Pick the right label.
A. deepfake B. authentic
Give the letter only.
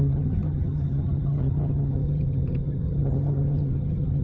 A